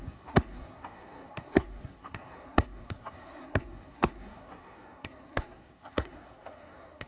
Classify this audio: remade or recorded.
remade